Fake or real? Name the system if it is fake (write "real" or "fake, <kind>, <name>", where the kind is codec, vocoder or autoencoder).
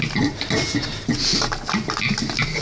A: real